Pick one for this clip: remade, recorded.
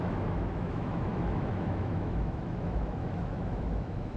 remade